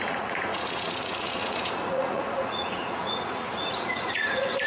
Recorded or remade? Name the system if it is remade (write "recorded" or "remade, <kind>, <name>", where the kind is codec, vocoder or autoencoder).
remade, vocoder, Vocos